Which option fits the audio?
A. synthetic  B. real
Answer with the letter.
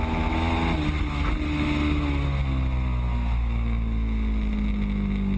B